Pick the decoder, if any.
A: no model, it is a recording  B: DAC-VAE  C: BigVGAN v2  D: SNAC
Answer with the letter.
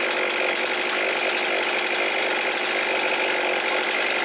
A